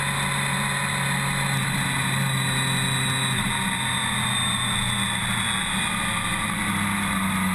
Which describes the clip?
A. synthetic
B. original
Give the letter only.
B